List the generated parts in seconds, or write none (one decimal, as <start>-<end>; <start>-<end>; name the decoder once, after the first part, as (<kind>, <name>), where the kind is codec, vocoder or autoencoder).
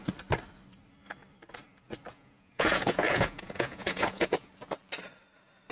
2.1-4.5 (vocoder, Vocos)